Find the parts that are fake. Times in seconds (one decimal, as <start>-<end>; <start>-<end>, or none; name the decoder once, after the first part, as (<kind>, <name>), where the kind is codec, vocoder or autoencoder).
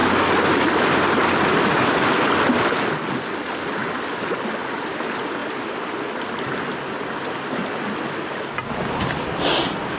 none